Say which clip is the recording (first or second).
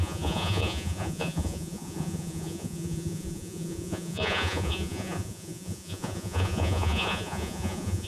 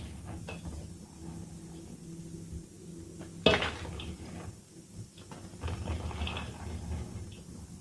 second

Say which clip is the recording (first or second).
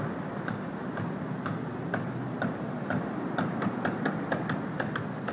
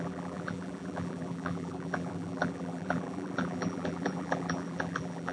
first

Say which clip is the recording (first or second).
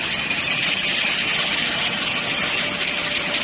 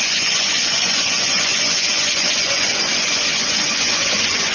first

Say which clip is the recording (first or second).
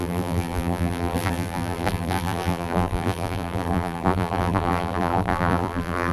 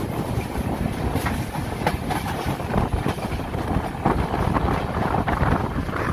second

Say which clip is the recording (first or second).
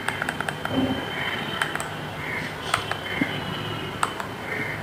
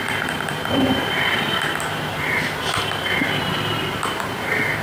first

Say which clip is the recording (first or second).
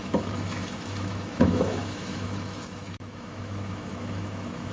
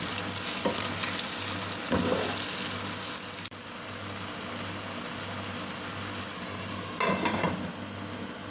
second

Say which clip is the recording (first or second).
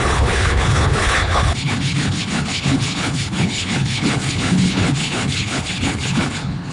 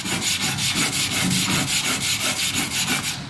second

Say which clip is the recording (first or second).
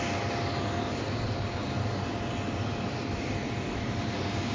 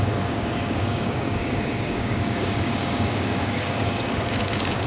first